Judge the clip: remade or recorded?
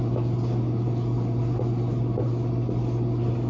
recorded